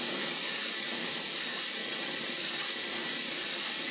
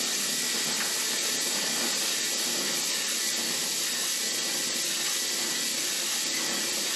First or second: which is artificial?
first